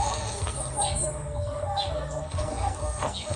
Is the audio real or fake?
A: fake